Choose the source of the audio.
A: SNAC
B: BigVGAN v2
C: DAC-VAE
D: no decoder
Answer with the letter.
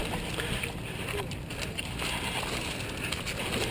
D